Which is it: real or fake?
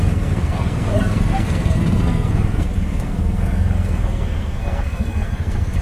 fake